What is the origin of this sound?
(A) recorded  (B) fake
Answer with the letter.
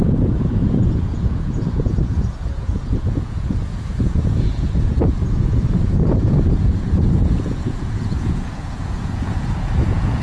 B